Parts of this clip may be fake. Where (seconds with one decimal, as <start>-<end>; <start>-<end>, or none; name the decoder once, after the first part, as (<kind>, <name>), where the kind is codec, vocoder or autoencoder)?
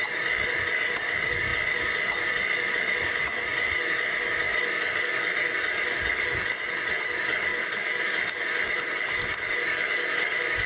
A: 0.0-10.7 (codec, DAC)